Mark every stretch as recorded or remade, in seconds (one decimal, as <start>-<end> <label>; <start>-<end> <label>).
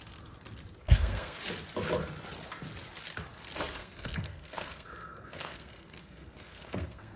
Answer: 0.0-0.8 recorded; 0.8-1.4 remade; 1.4-3.8 recorded; 3.8-7.2 remade